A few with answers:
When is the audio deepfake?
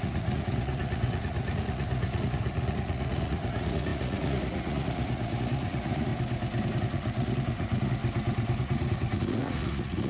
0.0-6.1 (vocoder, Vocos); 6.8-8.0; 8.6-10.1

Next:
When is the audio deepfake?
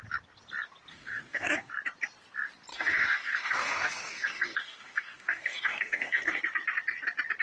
0.9-1.7 (codec, DAC); 2.7-6.4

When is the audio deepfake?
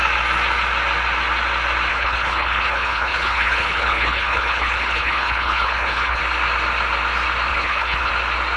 1.9-6.2 (codec, HILCodec); 7.5-8.1